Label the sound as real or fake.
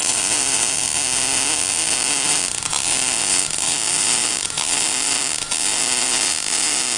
real